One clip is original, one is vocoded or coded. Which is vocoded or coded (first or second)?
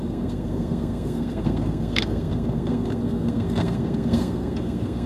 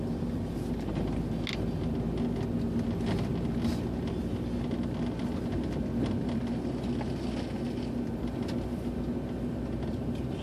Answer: first